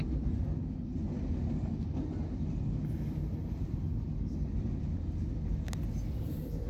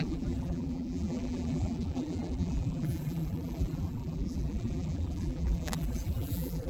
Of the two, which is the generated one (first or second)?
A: second